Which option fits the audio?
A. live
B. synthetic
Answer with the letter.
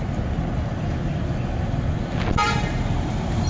A